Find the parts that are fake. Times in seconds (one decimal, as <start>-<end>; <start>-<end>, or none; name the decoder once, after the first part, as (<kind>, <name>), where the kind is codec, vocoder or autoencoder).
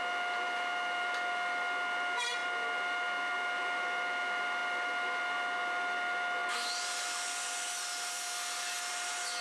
none